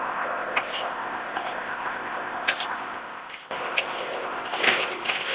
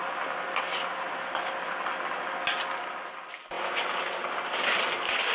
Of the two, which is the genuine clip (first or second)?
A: second